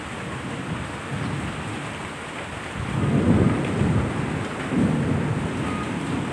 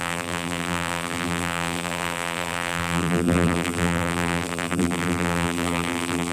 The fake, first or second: second